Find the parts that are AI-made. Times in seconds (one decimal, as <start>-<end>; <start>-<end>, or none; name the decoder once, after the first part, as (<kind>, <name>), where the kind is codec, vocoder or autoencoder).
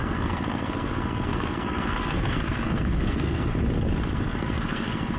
0.0-3.5 (codec, SNAC); 4.1-5.2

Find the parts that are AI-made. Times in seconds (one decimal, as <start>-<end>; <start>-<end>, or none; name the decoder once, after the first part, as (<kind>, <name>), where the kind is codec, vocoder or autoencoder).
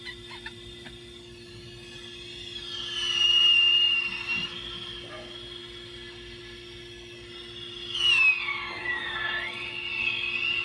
none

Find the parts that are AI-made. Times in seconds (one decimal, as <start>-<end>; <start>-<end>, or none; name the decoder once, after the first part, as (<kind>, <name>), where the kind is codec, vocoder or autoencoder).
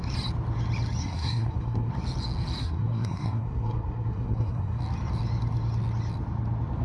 1.0-1.9 (codec, SNAC); 2.6-4.8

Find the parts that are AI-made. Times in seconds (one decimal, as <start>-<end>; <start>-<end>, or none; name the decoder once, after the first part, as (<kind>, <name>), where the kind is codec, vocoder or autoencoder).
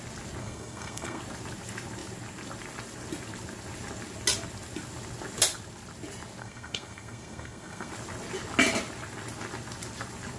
0.4-1.2 (codec, SNAC); 6.4-7.9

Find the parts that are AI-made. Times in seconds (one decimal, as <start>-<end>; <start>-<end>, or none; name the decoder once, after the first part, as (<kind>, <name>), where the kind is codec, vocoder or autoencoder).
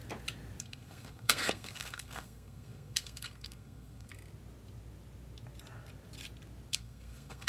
0.6-4.1 (codec, SNAC); 6.7-7.5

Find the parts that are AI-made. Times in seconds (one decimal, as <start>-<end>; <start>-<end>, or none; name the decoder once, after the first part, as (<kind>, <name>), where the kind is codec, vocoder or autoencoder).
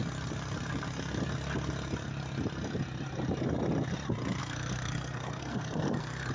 4.4-6.3 (codec, SNAC)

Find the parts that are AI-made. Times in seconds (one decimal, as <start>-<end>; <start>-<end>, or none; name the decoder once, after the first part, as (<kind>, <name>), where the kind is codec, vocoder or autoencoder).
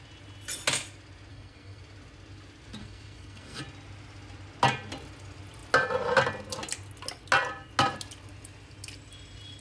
1.3-1.8 (codec, SNAC); 2.8-3.6